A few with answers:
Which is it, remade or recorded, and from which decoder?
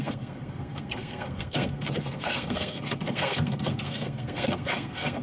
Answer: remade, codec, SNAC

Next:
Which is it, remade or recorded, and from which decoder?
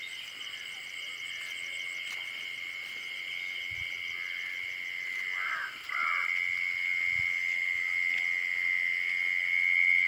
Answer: recorded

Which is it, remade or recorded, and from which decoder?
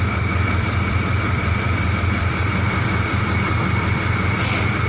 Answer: remade, vocoder, BigVGAN v2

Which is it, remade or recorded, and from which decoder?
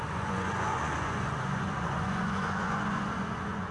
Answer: remade, vocoder, Vocos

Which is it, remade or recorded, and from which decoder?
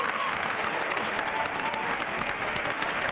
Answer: remade, autoencoder, DAC-VAE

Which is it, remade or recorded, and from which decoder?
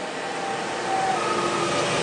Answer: recorded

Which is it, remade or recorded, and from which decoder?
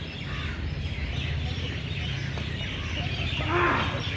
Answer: recorded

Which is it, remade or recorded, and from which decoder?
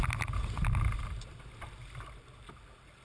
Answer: recorded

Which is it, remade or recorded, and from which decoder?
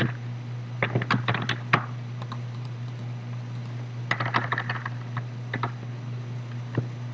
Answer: recorded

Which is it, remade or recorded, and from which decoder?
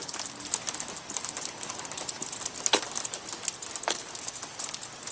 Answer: recorded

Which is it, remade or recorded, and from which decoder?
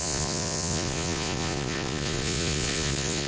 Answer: remade, vocoder, Vocos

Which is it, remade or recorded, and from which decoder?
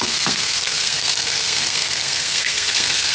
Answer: remade, codec, SNAC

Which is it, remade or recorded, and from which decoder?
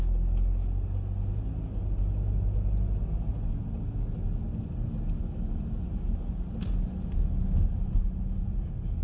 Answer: recorded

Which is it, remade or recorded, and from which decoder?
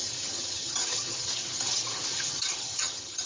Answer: remade, vocoder, HiFi-GAN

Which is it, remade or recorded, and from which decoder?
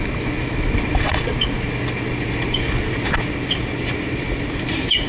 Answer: recorded